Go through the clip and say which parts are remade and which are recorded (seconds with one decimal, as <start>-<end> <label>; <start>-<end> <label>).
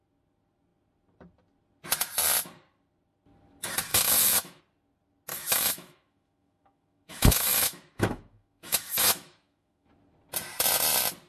0.0-3.9 recorded; 3.9-4.6 remade; 4.6-5.3 recorded; 5.3-9.9 remade; 9.9-11.3 recorded